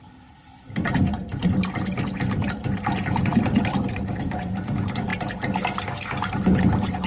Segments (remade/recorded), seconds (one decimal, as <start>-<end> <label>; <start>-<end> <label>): 0.0-5.1 remade; 5.1-6.6 recorded; 6.6-7.1 remade